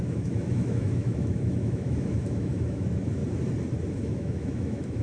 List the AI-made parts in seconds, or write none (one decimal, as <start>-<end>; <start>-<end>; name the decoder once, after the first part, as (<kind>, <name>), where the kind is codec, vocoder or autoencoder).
0.0-3.2 (autoencoder, DAC-VAE); 3.9-5.0